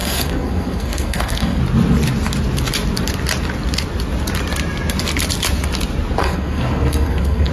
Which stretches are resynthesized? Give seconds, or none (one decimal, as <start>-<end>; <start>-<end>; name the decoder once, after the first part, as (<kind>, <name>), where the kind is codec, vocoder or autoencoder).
0.0-1.6 (codec, SNAC); 6.2-7.5